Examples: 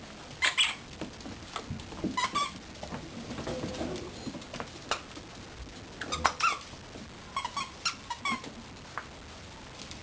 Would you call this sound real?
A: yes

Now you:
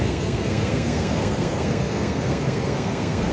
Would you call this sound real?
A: no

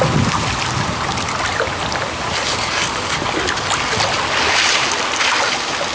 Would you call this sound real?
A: yes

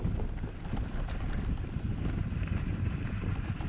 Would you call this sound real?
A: no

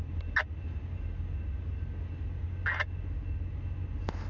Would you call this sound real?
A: yes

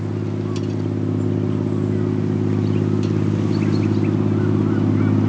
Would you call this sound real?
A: yes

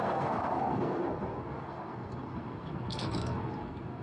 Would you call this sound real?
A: no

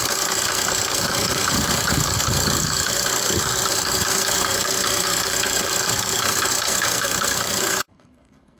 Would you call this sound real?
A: no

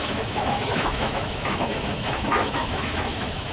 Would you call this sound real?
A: no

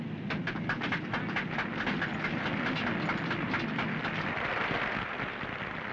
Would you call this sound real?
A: yes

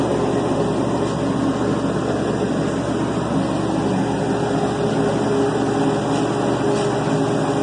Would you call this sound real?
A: yes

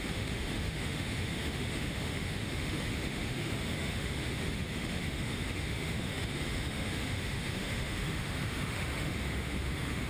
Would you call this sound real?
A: no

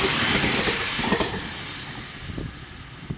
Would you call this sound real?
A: yes